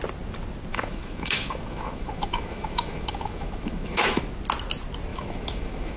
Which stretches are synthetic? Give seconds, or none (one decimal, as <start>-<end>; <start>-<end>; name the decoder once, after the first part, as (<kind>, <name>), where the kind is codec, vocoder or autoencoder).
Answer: 0.7-4.2 (autoencoder, DAC-VAE); 5.1-6.0